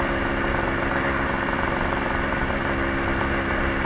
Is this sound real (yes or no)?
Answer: yes